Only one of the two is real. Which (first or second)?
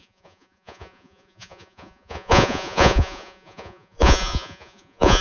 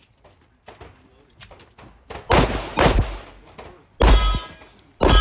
second